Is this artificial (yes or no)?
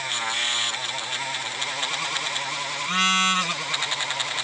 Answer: no